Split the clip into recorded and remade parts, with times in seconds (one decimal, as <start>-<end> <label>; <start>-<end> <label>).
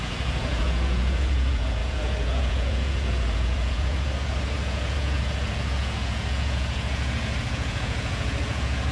0.0-8.9 remade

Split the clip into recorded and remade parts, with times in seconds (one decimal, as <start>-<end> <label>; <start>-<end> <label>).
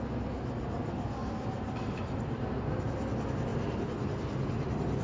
0.0-5.0 recorded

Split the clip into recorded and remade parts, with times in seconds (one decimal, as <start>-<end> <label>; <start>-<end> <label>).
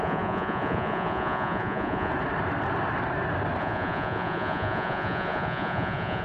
0.0-2.1 remade; 2.1-3.6 recorded; 3.6-6.2 remade